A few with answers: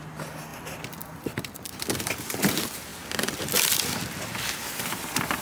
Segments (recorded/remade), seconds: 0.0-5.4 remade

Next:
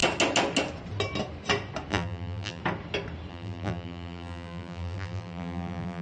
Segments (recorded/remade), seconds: 0.0-1.9 recorded; 1.9-2.6 remade; 2.6-3.3 recorded; 3.3-6.0 remade

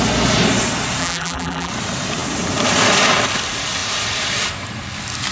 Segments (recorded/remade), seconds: 0.0-1.0 recorded; 1.0-1.7 remade; 1.7-5.3 recorded

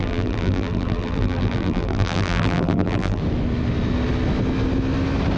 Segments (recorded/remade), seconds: 0.0-3.2 remade; 3.2-5.4 recorded

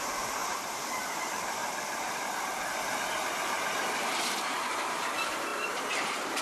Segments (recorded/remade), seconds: 0.0-6.4 remade